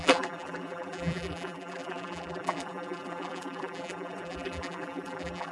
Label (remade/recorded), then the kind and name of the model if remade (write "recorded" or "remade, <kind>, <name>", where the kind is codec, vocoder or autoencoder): remade, vocoder, BigVGAN v2